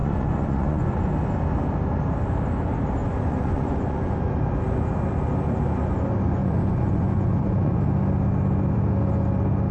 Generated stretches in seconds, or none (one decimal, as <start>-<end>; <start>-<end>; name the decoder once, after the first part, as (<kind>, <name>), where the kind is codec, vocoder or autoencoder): 0.0-1.1 (vocoder, Vocos); 3.0-4.1; 6.4-7.8